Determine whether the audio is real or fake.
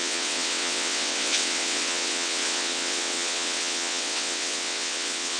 fake